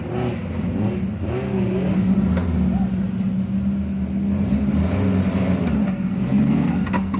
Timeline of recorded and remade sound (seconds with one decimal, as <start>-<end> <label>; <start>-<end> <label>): 0.0-5.8 recorded; 5.8-7.2 remade